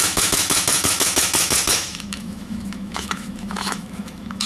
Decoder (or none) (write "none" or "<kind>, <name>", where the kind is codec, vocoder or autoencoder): autoencoder, DAC-VAE